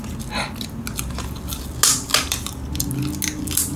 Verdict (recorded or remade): recorded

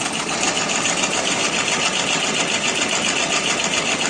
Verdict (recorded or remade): recorded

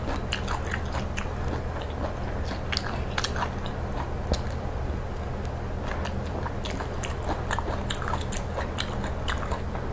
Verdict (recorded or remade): recorded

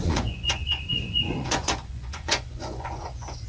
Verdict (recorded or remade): remade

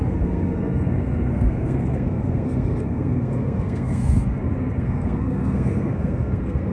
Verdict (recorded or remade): remade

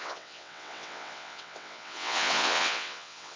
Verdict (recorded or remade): remade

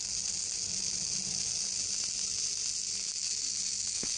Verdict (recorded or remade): recorded